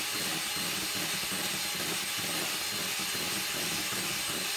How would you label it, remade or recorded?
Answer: recorded